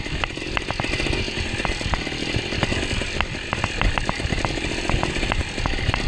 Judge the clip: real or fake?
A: real